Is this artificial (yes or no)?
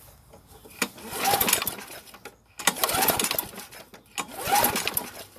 no